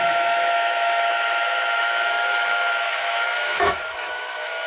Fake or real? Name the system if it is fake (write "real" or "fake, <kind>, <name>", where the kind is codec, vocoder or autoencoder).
fake, autoencoder, DAC-VAE